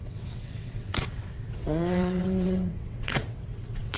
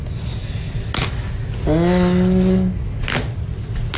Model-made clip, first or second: first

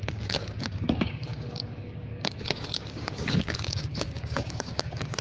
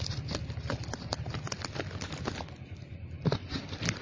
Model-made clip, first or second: first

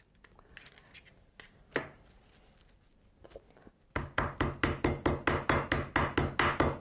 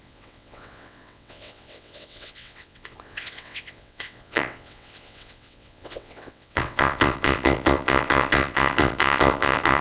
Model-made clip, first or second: second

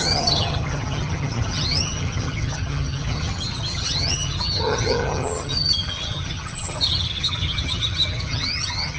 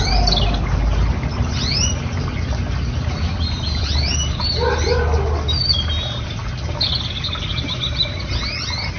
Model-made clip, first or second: first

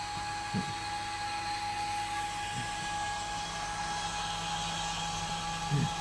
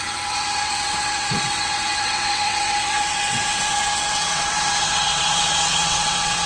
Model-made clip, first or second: second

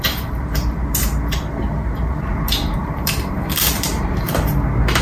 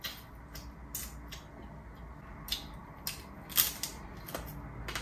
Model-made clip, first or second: first